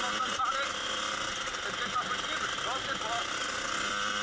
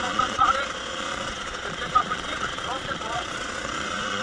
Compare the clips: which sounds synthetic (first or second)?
second